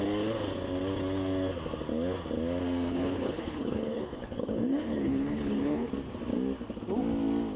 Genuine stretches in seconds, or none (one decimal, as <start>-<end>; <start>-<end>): 0.0-2.9; 5.9-7.6